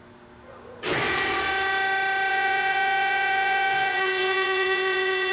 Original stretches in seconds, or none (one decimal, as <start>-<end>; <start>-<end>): 0.0-2.3